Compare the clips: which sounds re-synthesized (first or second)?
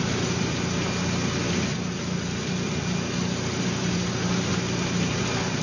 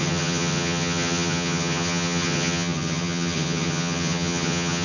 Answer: second